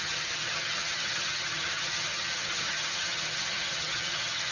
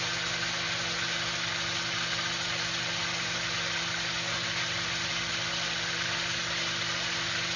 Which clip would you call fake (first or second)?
first